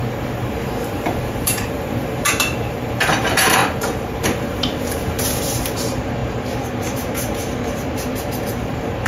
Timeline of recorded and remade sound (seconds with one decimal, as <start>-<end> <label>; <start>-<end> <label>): 0.0-0.5 recorded; 0.5-9.1 remade